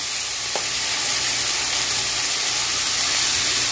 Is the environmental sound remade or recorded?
recorded